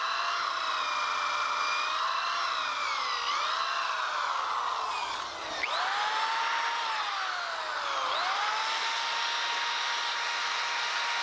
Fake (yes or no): no